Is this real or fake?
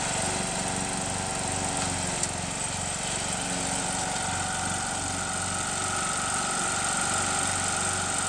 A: real